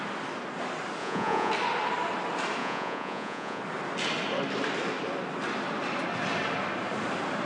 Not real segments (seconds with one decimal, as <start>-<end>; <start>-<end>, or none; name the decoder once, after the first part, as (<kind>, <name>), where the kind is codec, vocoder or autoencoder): 1.0-1.5 (vocoder, Vocos); 2.6-3.6